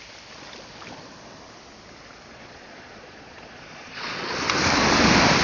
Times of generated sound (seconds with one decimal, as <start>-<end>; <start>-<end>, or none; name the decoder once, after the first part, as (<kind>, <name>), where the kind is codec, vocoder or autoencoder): 2.3-4.3 (vocoder, Vocos)